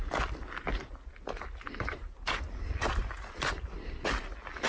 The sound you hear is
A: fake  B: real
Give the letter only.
B